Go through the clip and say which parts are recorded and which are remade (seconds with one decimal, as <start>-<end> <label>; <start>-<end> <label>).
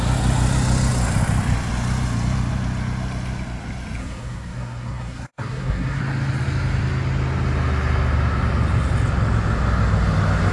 0.0-4.0 recorded; 4.0-6.0 remade; 6.0-10.5 recorded